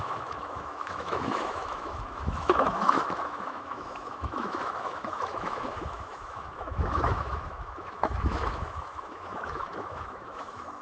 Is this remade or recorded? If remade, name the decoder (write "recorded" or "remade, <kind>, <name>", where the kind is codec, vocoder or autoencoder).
remade, autoencoder, DAC-VAE